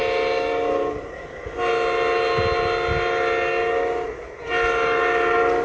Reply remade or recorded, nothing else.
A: recorded